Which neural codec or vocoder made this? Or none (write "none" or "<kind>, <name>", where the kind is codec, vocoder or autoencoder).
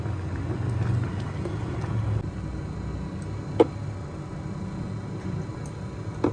none